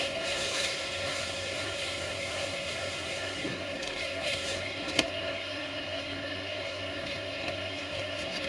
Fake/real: fake